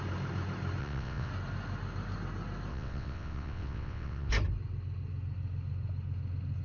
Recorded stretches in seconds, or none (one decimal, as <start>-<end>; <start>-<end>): 0.0-0.8; 1.3-2.7; 4.3-6.6